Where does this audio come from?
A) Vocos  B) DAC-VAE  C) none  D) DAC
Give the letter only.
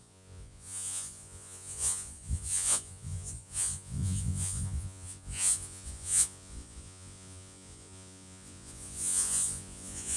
A